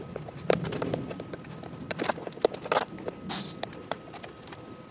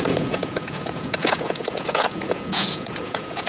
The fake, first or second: second